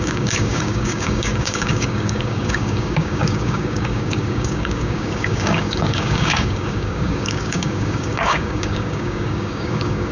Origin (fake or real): fake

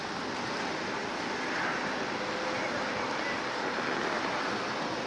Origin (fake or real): real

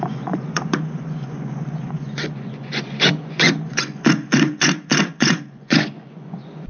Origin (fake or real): fake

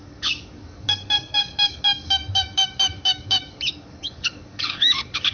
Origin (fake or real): fake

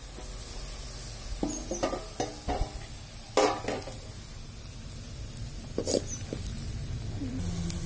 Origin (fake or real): real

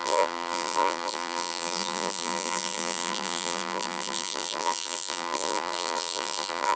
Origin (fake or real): fake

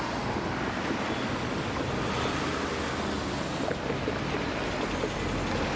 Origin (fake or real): real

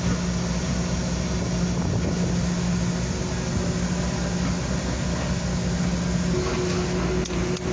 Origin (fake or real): real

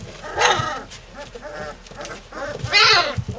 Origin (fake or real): real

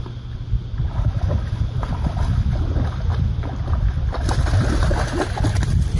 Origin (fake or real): real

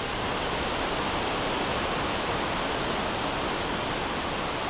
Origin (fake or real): real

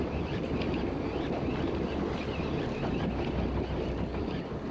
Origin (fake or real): real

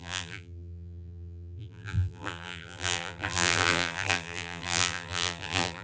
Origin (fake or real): fake